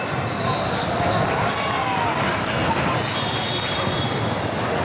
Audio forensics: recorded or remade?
recorded